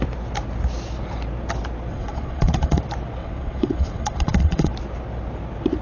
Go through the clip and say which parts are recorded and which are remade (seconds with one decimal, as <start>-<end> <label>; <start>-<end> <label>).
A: 0.0-1.9 recorded; 1.9-2.8 remade; 2.8-3.2 recorded; 3.2-4.7 remade; 4.7-5.8 recorded